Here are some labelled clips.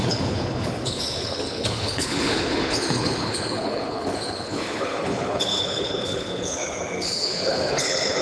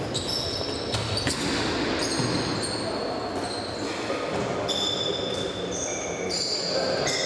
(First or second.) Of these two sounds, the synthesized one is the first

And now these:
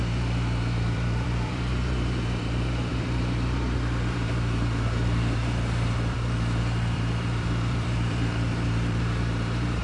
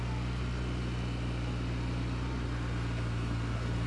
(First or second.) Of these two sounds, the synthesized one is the first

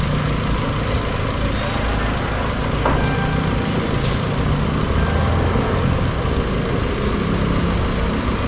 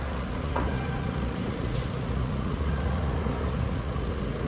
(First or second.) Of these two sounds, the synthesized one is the second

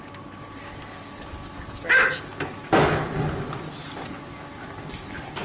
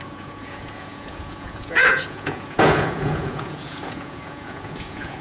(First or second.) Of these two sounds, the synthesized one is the second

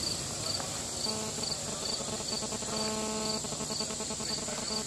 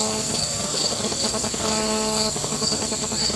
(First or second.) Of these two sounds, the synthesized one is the second